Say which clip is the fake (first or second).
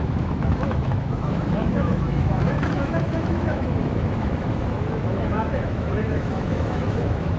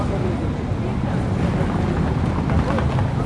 first